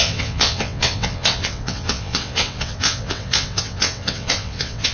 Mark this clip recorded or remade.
remade